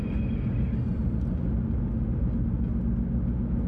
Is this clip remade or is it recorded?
recorded